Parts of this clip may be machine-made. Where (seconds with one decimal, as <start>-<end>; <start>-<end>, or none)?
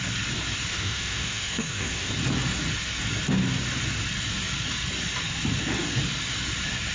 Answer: 0.7-2.1